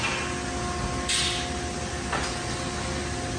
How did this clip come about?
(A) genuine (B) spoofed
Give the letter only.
A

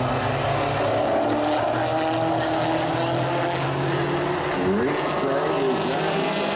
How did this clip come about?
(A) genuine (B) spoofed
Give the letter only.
A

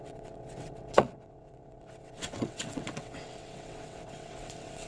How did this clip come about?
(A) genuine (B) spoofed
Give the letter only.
B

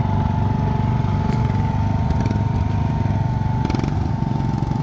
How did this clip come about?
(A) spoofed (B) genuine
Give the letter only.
B